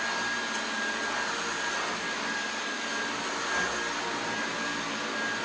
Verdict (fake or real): real